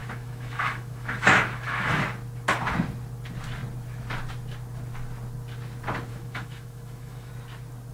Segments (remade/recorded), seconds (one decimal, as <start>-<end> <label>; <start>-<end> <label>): 0.0-2.0 remade; 2.0-6.1 recorded; 6.1-7.3 remade; 7.3-7.9 recorded